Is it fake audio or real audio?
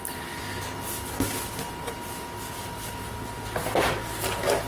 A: real